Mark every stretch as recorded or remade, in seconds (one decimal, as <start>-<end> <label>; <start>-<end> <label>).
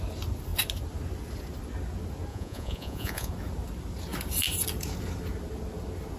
0.0-2.3 recorded; 2.3-3.3 remade; 3.3-6.2 recorded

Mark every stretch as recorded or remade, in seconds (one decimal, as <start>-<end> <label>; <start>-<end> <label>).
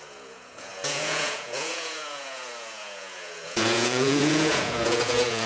0.0-5.5 remade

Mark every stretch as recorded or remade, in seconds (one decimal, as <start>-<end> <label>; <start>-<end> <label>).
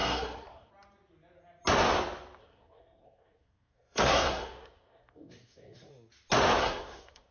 0.0-0.7 remade; 0.7-2.4 recorded; 2.4-5.9 remade; 5.9-6.6 recorded; 6.6-7.3 remade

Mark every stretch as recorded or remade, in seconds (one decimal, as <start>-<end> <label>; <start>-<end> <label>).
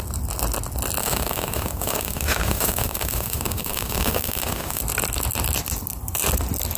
0.0-1.0 recorded; 1.0-4.8 remade; 4.8-6.8 recorded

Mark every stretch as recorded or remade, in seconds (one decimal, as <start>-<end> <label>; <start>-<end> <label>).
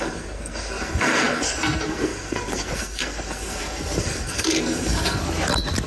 0.0-5.2 remade; 5.2-5.9 recorded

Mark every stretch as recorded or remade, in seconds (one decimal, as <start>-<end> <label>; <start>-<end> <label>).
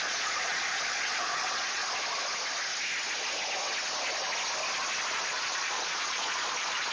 0.0-1.8 remade; 1.8-5.1 recorded; 5.1-6.9 remade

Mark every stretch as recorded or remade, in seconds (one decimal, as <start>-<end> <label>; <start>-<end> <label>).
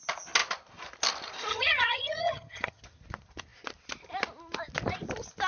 0.0-1.5 recorded; 1.5-2.8 remade; 2.8-5.5 recorded